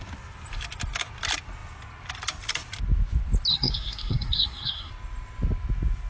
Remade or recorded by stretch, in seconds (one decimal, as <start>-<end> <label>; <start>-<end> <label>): 0.0-3.5 recorded; 3.5-4.9 remade; 4.9-6.1 recorded